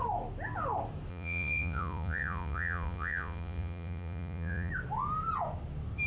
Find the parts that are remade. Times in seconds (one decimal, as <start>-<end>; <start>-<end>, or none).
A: 1.1-4.7